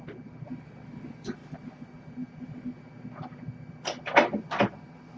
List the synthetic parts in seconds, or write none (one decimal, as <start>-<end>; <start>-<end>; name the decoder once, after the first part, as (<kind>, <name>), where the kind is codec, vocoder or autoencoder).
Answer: none